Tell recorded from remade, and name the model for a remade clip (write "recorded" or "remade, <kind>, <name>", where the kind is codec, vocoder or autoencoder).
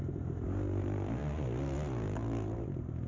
remade, vocoder, BigVGAN v2